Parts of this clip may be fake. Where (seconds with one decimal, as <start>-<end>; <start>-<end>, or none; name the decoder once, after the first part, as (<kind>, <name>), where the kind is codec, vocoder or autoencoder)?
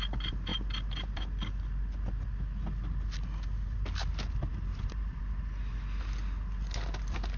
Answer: 4.5-5.2 (vocoder, BigVGAN v2)